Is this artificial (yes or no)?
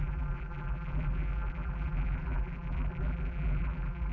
yes